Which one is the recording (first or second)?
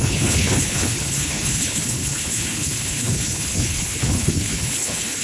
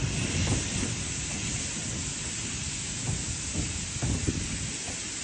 second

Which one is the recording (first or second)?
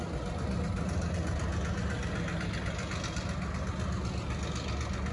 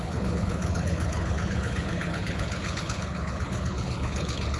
first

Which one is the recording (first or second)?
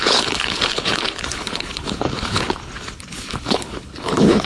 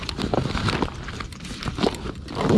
second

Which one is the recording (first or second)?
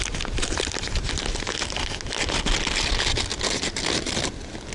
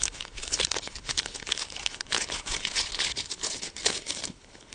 first